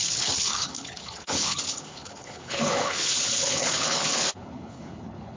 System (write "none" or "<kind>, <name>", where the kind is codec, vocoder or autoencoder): codec, HILCodec